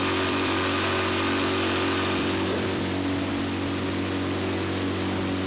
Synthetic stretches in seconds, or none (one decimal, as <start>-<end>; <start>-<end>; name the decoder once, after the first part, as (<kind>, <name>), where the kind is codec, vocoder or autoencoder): 0.0-3.3 (vocoder, BigVGAN v2)